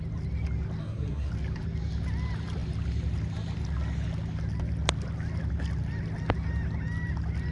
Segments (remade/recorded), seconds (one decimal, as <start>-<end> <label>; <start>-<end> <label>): 0.0-0.8 recorded; 0.8-1.3 remade; 1.3-7.5 recorded